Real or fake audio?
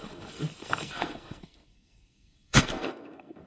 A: fake